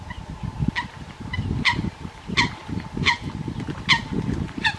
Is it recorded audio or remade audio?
recorded